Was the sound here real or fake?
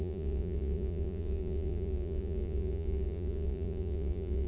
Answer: fake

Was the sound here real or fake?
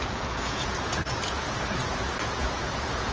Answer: fake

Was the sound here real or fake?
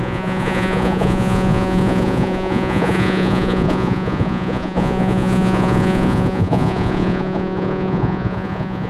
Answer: fake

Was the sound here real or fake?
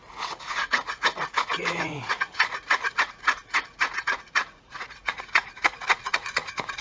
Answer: fake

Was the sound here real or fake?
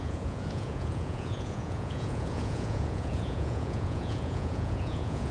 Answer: fake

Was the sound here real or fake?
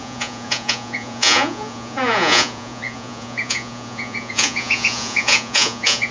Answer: fake